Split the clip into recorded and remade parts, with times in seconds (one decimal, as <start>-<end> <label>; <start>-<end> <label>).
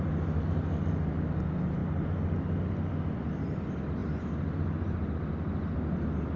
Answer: 0.0-6.4 recorded